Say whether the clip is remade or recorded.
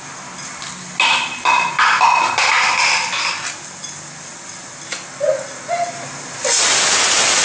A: recorded